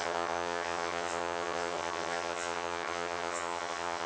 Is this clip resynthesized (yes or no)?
yes